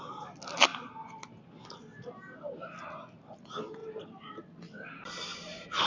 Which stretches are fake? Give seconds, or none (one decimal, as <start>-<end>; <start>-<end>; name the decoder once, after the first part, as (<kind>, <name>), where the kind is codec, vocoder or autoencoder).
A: 3.8-4.4 (vocoder, BigVGAN v2); 5.3-5.9